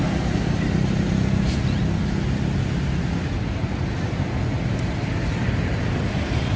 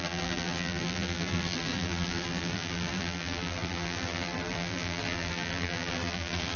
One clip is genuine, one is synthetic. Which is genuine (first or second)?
first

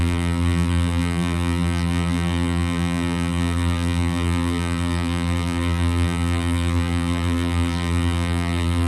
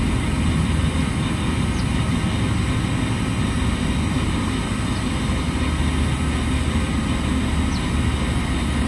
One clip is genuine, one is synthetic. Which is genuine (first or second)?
second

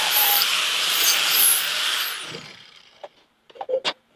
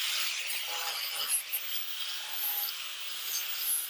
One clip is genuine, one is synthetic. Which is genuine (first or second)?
second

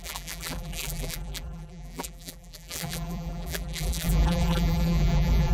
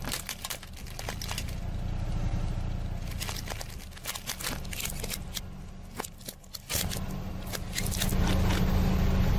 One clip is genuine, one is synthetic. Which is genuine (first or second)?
second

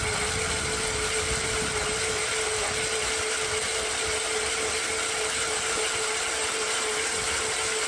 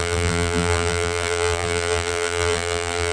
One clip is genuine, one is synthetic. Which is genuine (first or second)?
first